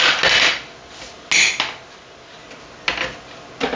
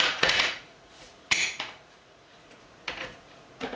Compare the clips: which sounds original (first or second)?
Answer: first